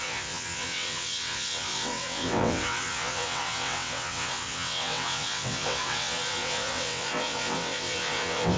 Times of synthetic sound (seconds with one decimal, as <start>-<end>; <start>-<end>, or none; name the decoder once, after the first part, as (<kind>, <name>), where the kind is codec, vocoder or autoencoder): 0.0-8.6 (vocoder, WaveNeXt)